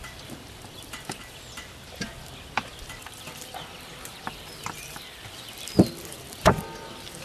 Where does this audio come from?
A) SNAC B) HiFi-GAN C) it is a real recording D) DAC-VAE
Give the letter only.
C